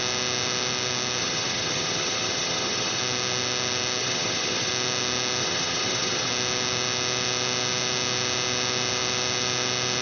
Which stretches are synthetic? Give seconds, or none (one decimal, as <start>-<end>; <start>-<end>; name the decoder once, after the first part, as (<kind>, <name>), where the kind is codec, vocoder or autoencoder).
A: 1.2-3.0 (vocoder, HiFi-GAN); 4.0-4.7; 5.4-6.3